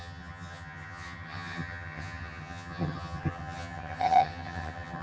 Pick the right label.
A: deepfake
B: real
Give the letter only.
A